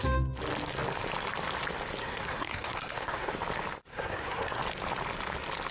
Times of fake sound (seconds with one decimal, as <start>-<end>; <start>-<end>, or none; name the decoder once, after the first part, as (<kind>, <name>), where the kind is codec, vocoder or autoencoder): 2.0-3.3 (codec, SNAC); 3.9-4.6